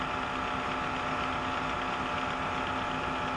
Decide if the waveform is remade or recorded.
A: recorded